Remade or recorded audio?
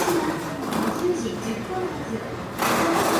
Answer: remade